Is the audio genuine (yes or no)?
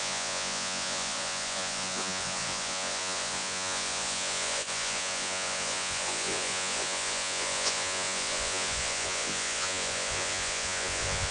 no